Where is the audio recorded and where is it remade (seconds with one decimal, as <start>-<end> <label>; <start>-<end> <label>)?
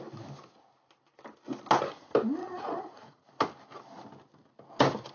0.0-2.4 recorded; 2.4-3.3 remade; 3.3-5.1 recorded